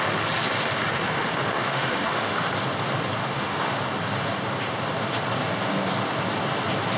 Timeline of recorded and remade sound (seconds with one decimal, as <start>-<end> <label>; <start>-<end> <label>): 0.0-0.9 recorded; 0.9-2.5 remade; 2.5-3.2 recorded; 3.2-3.8 remade; 3.8-7.0 recorded